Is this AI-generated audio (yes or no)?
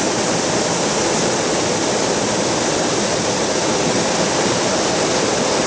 no